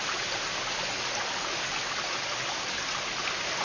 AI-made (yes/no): no